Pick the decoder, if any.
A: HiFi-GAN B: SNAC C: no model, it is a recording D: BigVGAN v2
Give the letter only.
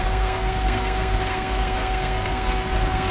B